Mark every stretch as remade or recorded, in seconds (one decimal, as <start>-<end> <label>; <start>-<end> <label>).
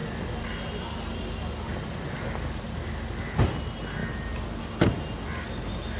0.0-6.0 recorded